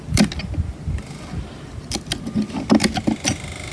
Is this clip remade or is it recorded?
recorded